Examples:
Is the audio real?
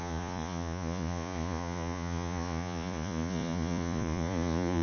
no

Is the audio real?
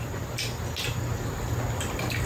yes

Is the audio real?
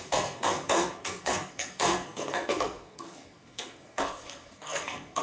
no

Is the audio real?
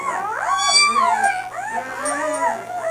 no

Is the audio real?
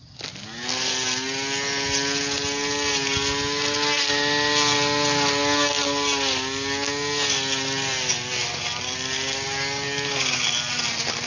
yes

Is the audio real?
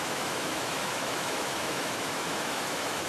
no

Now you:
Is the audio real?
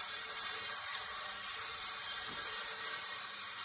no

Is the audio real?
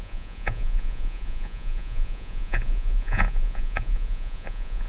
no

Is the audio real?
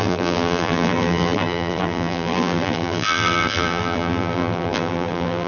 no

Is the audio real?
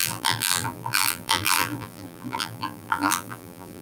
no